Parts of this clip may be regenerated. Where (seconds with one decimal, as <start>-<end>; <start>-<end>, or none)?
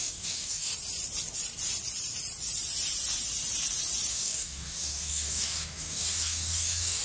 0.0-0.7; 4.1-7.0